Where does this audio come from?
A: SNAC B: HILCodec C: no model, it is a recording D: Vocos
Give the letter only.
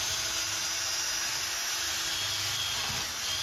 C